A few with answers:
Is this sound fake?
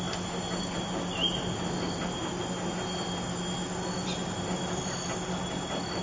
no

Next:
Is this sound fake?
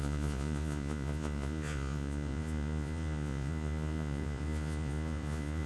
yes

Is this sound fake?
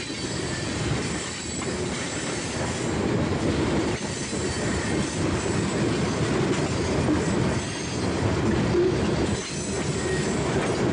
no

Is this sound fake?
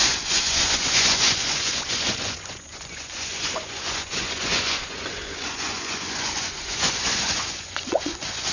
yes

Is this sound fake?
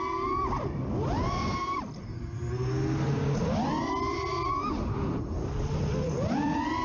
no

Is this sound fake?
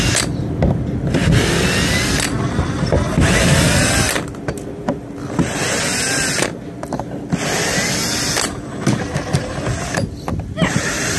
no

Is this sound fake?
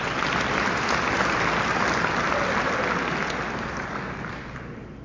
no